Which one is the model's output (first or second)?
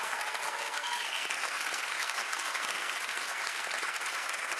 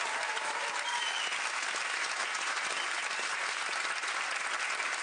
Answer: first